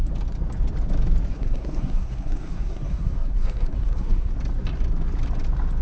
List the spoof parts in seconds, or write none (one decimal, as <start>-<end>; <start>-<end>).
1.3-4.3